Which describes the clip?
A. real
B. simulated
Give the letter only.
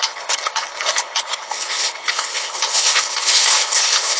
B